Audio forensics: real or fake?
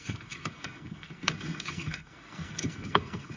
fake